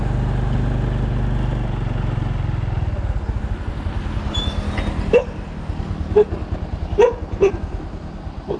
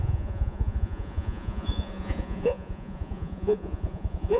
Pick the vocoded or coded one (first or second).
second